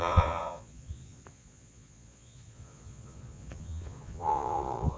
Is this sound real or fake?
fake